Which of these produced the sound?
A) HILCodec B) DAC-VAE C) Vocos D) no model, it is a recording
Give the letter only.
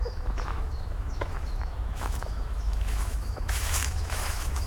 B